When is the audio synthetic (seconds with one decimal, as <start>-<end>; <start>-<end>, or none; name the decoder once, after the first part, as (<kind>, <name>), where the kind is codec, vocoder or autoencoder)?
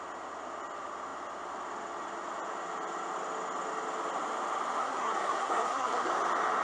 4.8-6.1 (codec, SNAC)